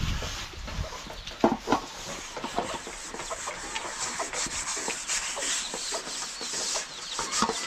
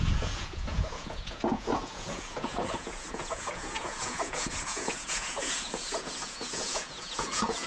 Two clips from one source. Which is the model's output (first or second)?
second